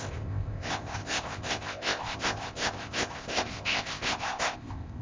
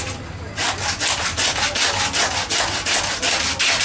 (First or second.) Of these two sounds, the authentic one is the second